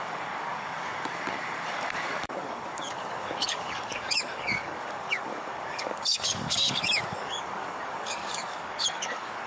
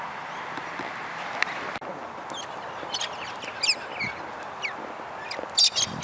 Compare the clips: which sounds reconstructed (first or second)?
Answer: first